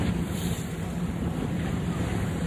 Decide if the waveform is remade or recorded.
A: remade